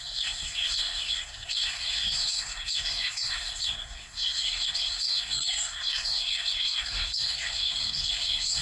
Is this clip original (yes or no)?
no